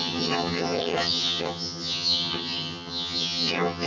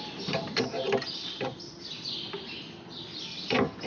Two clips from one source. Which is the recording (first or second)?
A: second